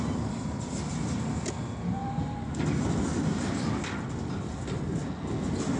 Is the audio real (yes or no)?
yes